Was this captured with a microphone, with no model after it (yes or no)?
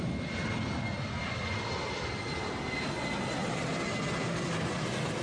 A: yes